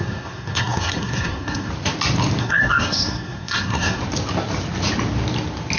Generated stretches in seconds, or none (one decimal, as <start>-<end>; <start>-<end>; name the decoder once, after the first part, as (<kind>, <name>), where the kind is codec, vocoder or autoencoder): 0.0-1.7 (codec, SNAC); 2.4-4.0